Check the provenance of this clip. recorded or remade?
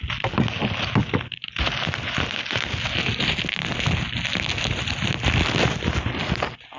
recorded